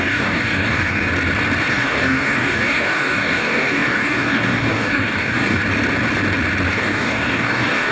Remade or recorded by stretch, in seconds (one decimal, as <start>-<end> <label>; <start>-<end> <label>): 0.0-1.1 remade; 1.1-1.7 recorded; 1.7-5.6 remade; 5.6-6.7 recorded; 6.7-7.9 remade